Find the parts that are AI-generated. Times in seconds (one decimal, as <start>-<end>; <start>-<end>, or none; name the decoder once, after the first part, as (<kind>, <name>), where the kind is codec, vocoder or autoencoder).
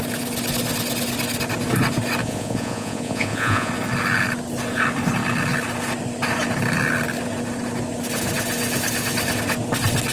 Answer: 2.2-3.7 (vocoder, Vocos)